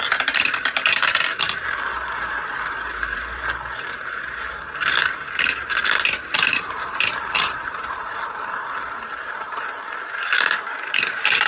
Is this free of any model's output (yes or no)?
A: no